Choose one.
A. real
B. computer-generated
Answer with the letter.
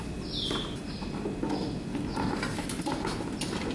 A